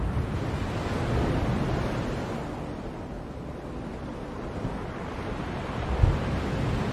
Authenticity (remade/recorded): recorded